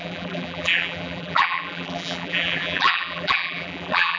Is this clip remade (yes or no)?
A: yes